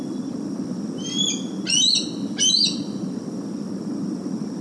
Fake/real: real